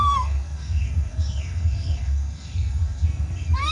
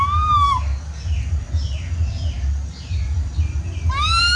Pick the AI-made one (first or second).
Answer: first